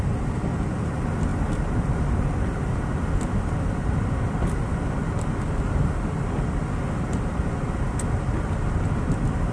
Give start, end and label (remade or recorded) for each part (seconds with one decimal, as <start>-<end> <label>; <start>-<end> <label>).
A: 0.0-9.5 recorded